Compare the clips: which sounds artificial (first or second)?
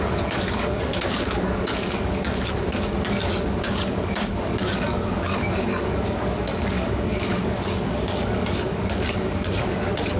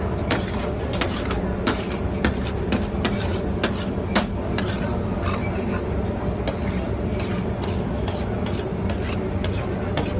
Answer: first